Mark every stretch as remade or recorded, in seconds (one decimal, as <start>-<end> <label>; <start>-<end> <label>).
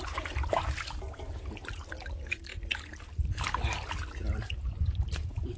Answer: 0.0-0.6 remade; 0.6-1.5 recorded; 1.5-2.5 remade; 2.5-4.4 recorded; 4.4-5.6 remade